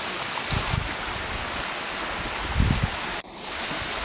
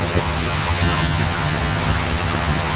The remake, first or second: second